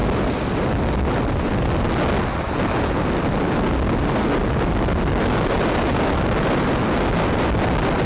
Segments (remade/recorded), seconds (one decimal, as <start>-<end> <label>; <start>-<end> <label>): 0.0-8.1 recorded